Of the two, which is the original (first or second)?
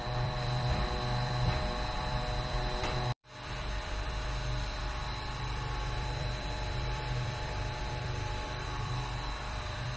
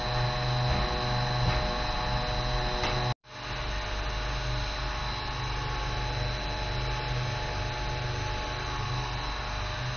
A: second